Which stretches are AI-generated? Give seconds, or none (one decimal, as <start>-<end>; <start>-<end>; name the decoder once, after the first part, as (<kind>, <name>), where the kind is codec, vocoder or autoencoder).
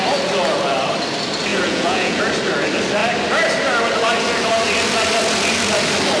1.5-2.2 (vocoder, Vocos)